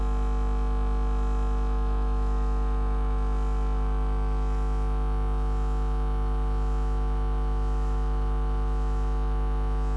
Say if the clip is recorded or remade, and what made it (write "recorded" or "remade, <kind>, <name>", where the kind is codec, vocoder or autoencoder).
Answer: remade, autoencoder, DAC-VAE